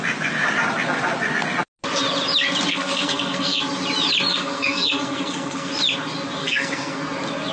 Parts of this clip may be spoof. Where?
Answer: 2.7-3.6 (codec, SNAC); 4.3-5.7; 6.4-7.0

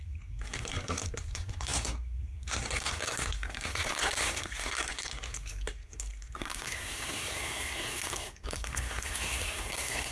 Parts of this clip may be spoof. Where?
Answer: 0.0-10.1 (codec, SNAC)

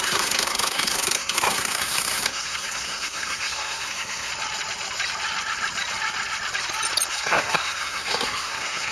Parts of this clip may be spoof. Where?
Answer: 0.0-4.3 (codec, SNAC); 7.1-8.9

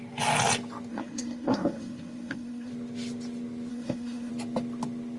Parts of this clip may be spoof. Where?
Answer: 0.9-2.7 (codec, SNAC); 3.7-4.3